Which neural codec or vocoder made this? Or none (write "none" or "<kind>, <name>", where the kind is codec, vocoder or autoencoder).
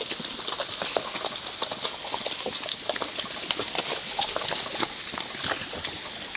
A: none